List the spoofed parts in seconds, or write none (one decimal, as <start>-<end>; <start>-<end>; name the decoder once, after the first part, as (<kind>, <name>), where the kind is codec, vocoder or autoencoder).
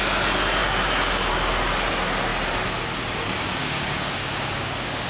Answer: 3.6-5.1 (codec, DAC)